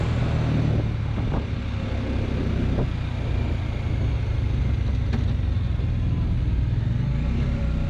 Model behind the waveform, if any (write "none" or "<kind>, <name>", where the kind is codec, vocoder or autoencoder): none